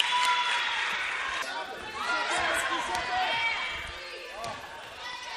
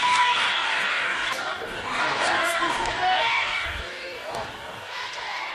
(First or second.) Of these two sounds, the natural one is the first